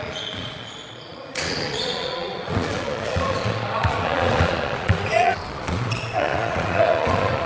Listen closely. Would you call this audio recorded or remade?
remade